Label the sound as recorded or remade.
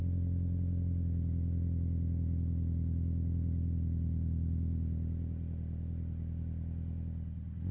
recorded